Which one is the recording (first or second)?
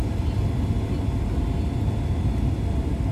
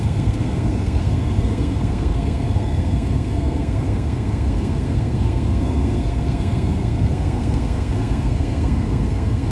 first